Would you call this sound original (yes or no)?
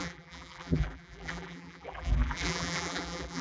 no